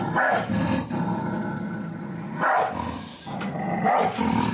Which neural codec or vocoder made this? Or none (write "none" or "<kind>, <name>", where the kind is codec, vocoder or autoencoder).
none